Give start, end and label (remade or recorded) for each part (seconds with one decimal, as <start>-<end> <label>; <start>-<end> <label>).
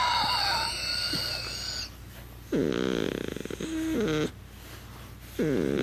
0.0-5.8 recorded